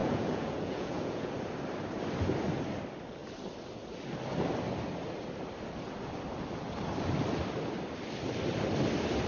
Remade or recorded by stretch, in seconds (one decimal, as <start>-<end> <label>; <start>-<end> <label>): 0.0-1.3 remade; 1.3-9.3 recorded